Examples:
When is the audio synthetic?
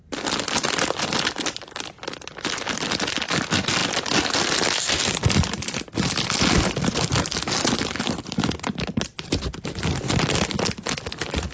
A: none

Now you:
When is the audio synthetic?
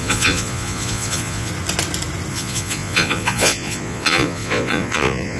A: 0.0-1.5 (vocoder, Vocos); 2.3-5.4